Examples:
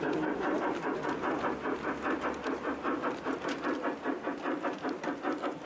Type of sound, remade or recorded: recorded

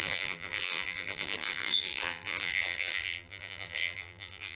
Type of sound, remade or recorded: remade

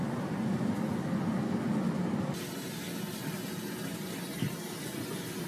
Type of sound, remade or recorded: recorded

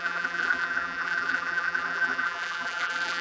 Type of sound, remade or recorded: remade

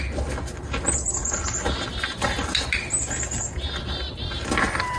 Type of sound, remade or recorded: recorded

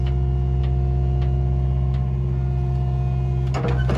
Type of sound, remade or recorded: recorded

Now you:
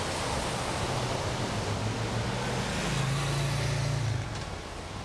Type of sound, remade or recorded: recorded